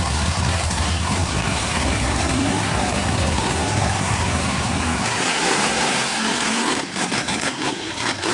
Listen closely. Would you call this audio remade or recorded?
remade